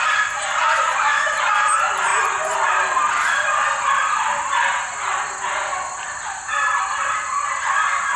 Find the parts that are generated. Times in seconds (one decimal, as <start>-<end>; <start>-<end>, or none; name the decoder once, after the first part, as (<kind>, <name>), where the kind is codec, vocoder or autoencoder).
none